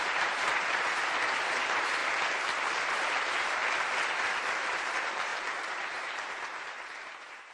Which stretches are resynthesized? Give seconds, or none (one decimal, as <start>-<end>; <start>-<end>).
0.0-2.0; 2.9-3.6; 4.7-7.5